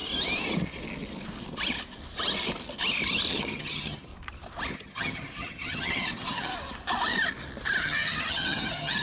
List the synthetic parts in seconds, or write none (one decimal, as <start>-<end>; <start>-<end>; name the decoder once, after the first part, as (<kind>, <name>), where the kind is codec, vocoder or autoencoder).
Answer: 3.3-4.1 (vocoder, HiFi-GAN); 4.7-6.5; 7.8-9.0